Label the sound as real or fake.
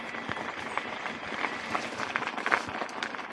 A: real